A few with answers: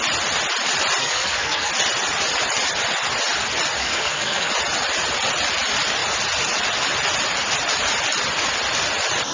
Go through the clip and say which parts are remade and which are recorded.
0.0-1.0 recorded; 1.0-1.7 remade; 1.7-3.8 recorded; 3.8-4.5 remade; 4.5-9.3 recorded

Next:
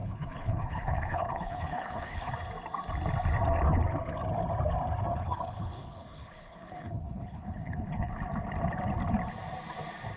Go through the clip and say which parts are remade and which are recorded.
0.0-2.3 remade; 2.3-5.1 recorded; 5.1-8.1 remade; 8.1-10.2 recorded

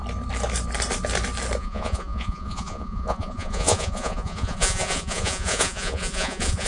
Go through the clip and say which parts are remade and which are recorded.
0.0-1.6 recorded; 1.6-6.7 remade

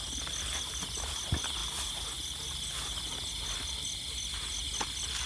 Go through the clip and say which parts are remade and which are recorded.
0.0-5.3 recorded

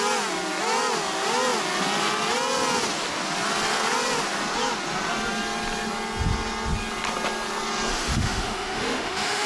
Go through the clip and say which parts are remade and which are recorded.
0.0-7.9 recorded; 7.9-9.5 remade